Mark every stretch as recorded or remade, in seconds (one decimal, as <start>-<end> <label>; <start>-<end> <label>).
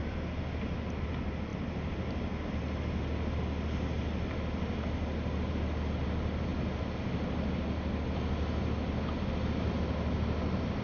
0.0-10.8 recorded